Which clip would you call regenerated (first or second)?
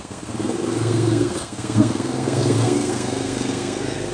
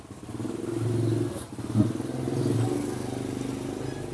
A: first